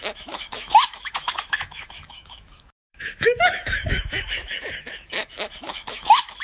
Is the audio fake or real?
fake